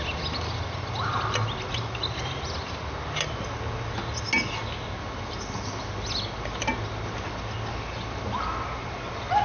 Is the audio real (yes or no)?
yes